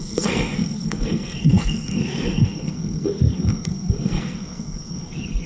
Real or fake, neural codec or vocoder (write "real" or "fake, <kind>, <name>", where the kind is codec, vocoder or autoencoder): fake, codec, SNAC